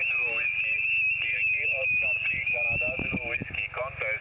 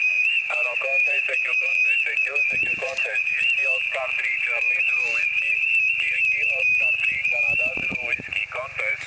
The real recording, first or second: first